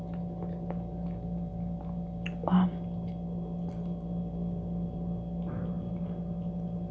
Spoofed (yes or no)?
no